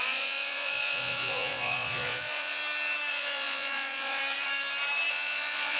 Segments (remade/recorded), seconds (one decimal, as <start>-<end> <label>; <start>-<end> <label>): 0.0-2.6 remade; 2.6-3.1 recorded; 3.1-4.2 remade; 4.2-5.1 recorded; 5.1-5.8 remade